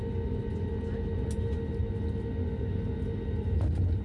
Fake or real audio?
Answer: real